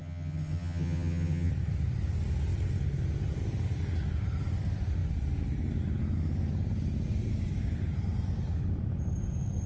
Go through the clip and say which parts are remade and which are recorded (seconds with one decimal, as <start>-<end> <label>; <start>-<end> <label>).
0.0-1.5 remade; 1.5-9.7 recorded

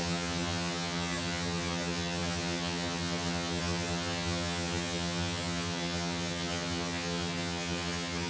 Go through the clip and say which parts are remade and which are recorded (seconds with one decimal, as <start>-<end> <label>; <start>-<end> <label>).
0.0-8.3 remade

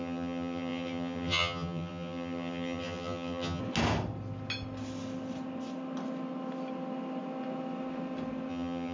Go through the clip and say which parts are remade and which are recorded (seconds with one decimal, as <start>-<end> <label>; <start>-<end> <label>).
0.0-3.6 remade; 3.6-8.5 recorded; 8.5-8.9 remade

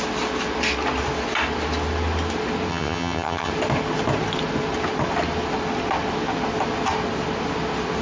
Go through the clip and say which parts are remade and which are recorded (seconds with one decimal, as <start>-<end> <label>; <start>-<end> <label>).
0.0-2.7 recorded; 2.7-3.5 remade; 3.5-8.0 recorded

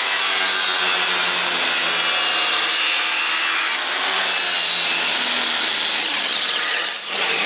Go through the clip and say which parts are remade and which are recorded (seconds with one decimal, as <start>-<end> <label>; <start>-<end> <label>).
0.0-6.0 recorded; 6.0-7.5 remade

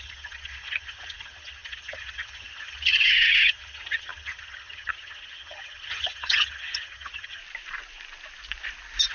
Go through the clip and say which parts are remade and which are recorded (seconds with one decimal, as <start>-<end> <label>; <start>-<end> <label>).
0.0-7.4 remade; 7.4-9.1 recorded

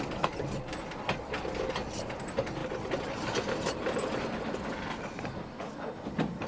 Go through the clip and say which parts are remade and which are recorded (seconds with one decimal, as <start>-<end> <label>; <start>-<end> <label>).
0.0-6.5 recorded